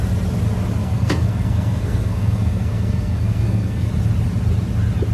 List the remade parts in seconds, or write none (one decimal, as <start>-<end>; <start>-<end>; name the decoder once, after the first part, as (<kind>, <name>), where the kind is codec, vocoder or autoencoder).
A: 0.8-3.9 (codec, SNAC)